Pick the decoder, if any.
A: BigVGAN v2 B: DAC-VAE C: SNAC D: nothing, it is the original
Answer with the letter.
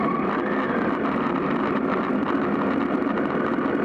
D